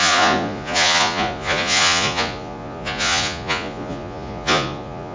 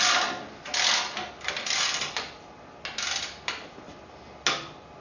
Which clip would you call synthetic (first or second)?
first